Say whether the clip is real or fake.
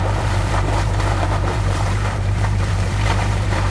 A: fake